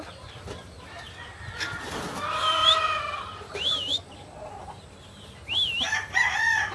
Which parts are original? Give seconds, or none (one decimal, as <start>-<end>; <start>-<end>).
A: 0.0-6.7